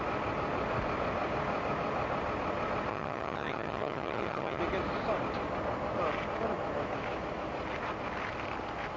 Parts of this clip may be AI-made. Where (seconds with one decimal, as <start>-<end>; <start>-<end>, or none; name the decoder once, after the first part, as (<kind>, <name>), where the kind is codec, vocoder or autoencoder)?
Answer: 2.9-4.6 (vocoder, HiFi-GAN)